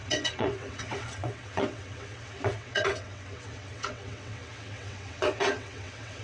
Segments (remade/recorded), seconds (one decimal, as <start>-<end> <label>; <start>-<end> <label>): 0.0-6.2 remade